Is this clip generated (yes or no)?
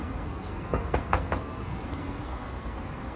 yes